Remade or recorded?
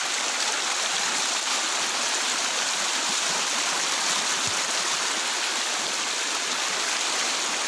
recorded